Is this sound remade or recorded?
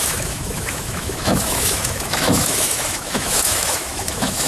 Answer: remade